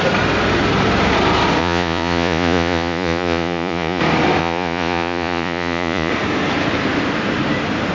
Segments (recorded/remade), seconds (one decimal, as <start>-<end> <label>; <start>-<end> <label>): 0.0-1.6 recorded; 1.6-4.0 remade; 4.0-4.4 recorded; 4.4-6.1 remade; 6.1-7.9 recorded